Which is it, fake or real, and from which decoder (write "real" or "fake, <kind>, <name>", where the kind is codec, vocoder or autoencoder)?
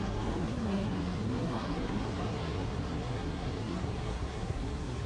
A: fake, codec, SNAC